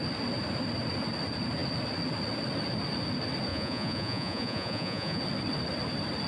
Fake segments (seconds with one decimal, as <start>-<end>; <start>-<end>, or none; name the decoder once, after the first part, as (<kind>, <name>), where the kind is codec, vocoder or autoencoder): 3.5-5.2 (vocoder, Vocos)